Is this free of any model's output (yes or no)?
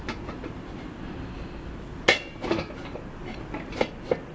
yes